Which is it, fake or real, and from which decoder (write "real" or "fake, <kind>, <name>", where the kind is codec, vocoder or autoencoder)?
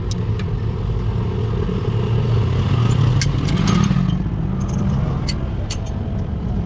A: real